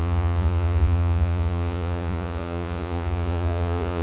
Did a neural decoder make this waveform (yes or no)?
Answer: yes